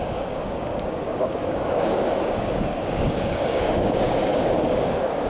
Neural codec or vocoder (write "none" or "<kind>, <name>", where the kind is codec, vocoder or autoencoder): codec, DAC